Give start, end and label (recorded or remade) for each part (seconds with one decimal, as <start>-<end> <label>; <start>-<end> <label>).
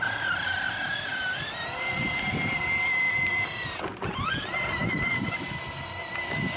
0.0-6.6 recorded